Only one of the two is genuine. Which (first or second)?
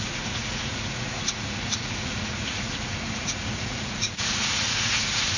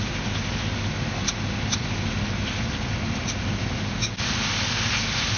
second